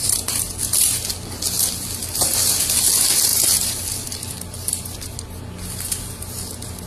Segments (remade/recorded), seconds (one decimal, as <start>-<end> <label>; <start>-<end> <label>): 0.0-0.6 remade; 0.6-3.3 recorded; 3.3-5.4 remade; 5.4-6.9 recorded